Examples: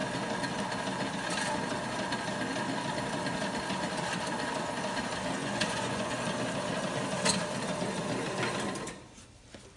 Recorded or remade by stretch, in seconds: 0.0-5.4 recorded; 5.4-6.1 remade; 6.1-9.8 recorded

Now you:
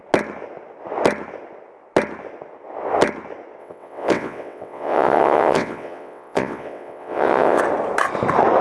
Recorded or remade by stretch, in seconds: 0.0-3.6 recorded; 3.6-7.6 remade; 7.6-8.6 recorded

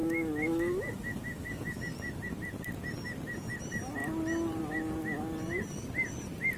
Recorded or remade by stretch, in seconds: 0.0-1.8 remade; 1.8-6.6 recorded

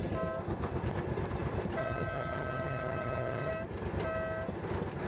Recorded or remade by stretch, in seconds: 0.0-1.8 recorded; 1.8-3.5 remade; 3.5-5.1 recorded

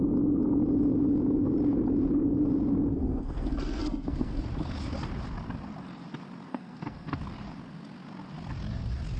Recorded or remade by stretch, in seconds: 0.0-2.9 recorded; 2.9-4.4 remade; 4.4-6.5 recorded; 6.5-7.2 remade; 7.2-9.2 recorded

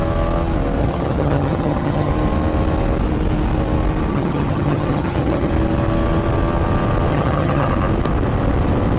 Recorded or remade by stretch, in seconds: 0.0-0.8 recorded; 0.8-2.1 remade; 2.1-4.1 recorded; 4.1-5.5 remade; 5.5-7.1 recorded; 7.1-7.7 remade; 7.7-9.0 recorded

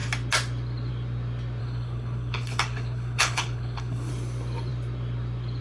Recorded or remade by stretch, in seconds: 0.0-1.6 recorded; 1.6-4.1 remade; 4.1-5.6 recorded

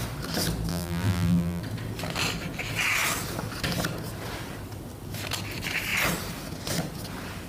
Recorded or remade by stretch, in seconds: 0.0-0.7 recorded; 0.7-1.6 remade; 1.6-7.5 recorded